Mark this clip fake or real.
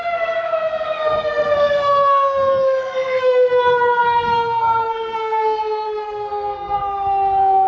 fake